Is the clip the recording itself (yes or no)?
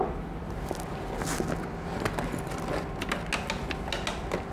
yes